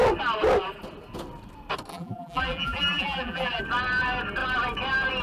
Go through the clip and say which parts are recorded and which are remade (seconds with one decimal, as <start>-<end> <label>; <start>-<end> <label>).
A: 0.0-1.9 recorded; 1.9-3.6 remade; 3.6-5.2 recorded